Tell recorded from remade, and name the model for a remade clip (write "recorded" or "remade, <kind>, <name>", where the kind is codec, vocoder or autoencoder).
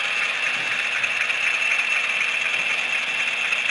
recorded